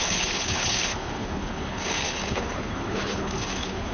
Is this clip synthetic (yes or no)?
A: yes